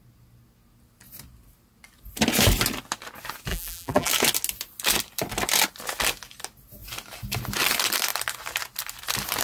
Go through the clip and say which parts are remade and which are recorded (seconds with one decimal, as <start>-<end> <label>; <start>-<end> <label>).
0.0-3.5 recorded; 3.5-4.1 remade; 4.1-9.4 recorded